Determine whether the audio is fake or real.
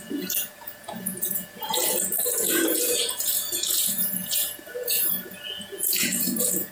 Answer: fake